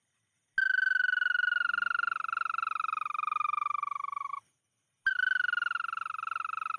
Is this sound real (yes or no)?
yes